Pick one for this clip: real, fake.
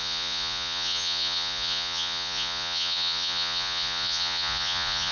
fake